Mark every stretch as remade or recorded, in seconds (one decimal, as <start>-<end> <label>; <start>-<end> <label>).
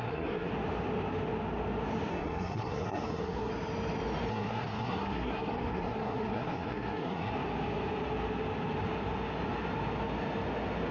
0.0-0.5 remade; 0.5-2.1 recorded; 2.1-3.5 remade; 3.5-4.3 recorded; 4.3-7.3 remade; 7.3-10.9 recorded